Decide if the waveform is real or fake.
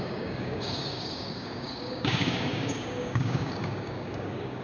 fake